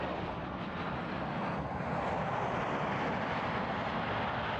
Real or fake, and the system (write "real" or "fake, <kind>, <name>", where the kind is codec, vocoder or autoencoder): real